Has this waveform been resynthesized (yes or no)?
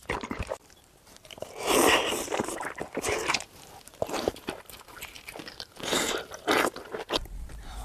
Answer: yes